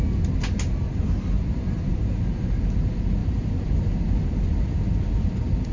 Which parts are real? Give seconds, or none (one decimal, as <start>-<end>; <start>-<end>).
0.0-1.9; 2.6-3.2; 4.8-5.7